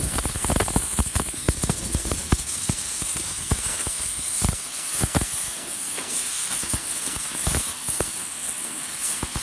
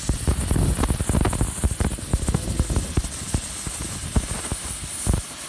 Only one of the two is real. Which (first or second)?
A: second